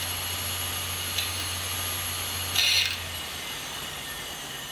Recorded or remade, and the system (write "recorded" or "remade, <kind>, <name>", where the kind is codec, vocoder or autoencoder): recorded